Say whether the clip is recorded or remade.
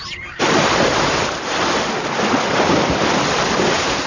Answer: recorded